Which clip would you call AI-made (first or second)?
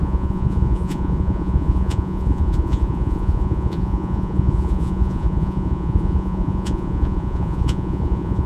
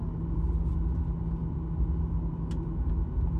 first